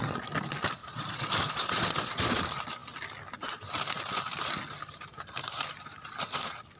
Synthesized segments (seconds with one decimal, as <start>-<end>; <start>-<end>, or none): 0.8-2.4